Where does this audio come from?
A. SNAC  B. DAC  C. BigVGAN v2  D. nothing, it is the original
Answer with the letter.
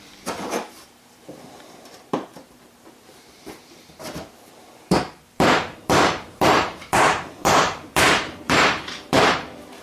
C